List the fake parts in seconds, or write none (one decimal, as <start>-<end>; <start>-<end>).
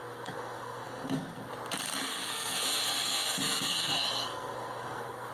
0.0-1.5; 2.1-5.3